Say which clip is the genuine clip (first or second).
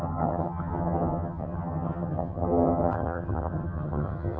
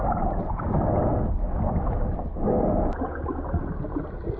second